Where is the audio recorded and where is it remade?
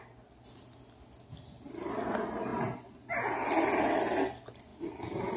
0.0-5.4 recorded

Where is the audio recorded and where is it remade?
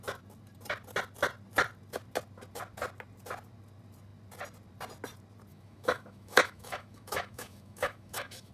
0.0-5.5 recorded; 5.5-8.5 remade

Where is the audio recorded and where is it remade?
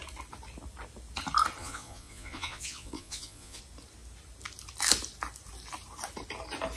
0.0-1.6 recorded; 1.6-3.6 remade; 3.6-6.8 recorded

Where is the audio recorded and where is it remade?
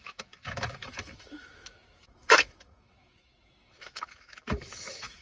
0.0-5.2 remade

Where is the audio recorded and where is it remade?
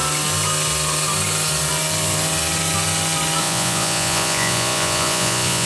0.0-3.4 recorded; 3.4-5.7 remade